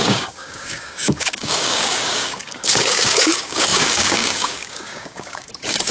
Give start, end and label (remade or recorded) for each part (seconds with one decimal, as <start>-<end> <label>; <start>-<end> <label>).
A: 0.0-5.9 remade